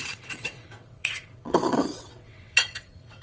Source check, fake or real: fake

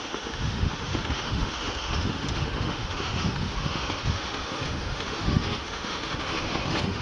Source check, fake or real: fake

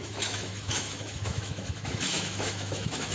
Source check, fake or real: fake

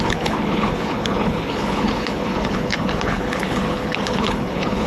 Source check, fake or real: fake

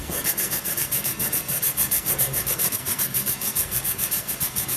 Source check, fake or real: fake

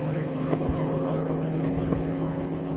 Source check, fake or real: fake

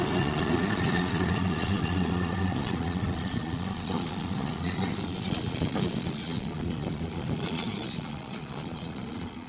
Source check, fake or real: fake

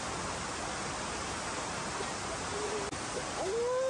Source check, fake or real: real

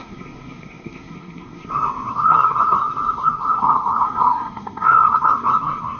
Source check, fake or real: fake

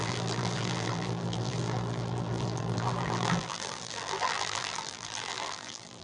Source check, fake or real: fake